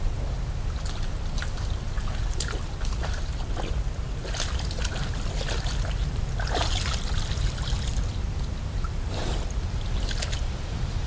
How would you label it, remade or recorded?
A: recorded